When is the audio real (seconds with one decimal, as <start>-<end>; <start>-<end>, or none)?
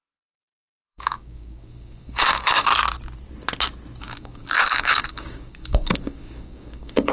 2.7-4.0